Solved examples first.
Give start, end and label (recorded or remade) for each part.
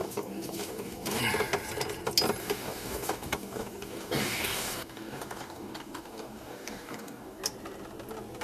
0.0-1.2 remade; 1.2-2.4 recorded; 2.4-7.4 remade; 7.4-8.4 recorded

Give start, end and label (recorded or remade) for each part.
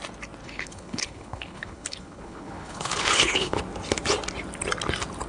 0.0-0.4 recorded; 0.4-3.6 remade; 3.6-5.3 recorded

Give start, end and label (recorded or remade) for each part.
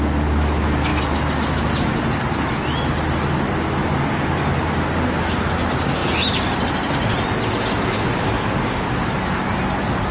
0.0-10.1 recorded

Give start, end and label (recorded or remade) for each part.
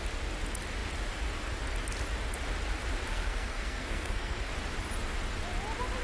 0.0-3.1 recorded; 3.1-4.5 remade; 4.5-6.0 recorded